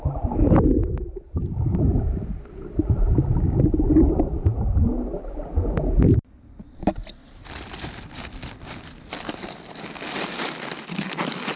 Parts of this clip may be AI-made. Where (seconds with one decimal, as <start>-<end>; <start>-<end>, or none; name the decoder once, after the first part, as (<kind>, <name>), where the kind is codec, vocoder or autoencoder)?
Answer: none